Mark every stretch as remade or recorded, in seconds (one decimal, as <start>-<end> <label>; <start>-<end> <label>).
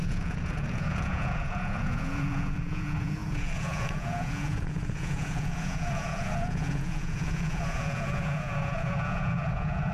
0.0-9.9 remade